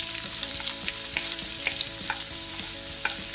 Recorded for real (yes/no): no